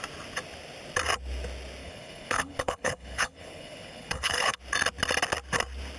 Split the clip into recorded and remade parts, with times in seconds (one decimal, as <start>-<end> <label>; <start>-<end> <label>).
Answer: 0.0-1.8 recorded; 1.8-4.6 remade; 4.6-6.0 recorded